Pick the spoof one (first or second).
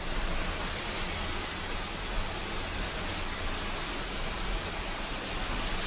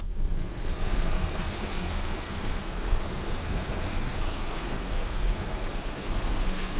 second